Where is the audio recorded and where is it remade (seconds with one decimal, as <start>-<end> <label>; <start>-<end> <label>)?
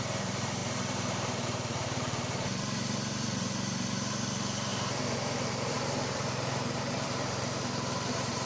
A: 0.0-8.5 remade